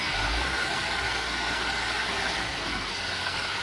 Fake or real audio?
fake